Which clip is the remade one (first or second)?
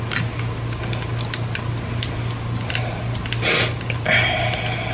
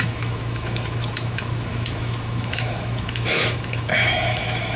second